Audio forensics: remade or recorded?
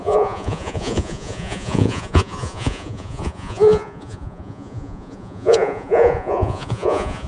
remade